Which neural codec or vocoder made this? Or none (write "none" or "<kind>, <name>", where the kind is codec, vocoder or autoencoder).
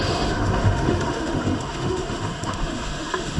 autoencoder, DAC-VAE